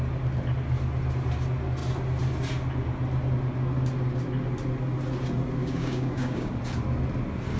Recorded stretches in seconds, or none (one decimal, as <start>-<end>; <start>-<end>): 0.0-5.6; 6.5-7.6